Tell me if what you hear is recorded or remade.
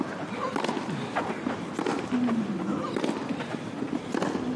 recorded